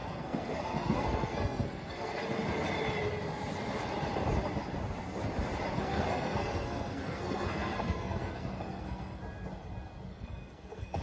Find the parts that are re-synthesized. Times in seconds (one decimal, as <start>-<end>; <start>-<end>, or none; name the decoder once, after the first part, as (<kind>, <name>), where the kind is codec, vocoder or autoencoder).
0.0-2.2 (codec, SNAC); 5.7-9.2; 10.1-11.0